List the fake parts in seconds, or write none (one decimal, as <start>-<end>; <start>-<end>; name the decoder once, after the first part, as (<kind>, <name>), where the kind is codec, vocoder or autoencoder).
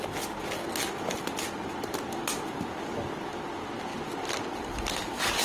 none